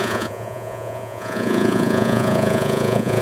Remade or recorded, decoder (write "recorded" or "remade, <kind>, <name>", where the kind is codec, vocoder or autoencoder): remade, vocoder, Vocos